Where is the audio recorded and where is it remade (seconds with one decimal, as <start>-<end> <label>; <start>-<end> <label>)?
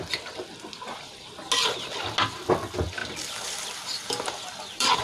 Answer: 0.0-3.0 recorded; 3.0-5.0 remade